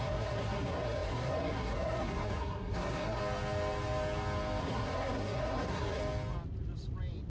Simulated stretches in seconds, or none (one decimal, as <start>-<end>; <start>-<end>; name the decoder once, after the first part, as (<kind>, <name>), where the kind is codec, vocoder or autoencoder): 0.0-3.2 (codec, SNAC); 4.6-6.0